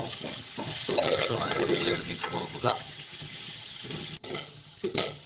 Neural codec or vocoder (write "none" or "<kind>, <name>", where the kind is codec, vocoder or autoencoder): vocoder, HiFi-GAN